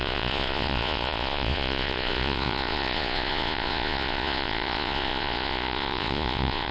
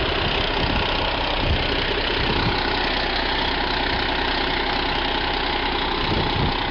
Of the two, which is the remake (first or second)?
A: first